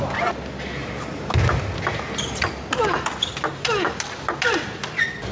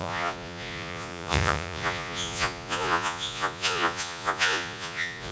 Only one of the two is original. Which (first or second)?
first